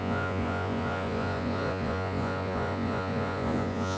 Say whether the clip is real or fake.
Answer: fake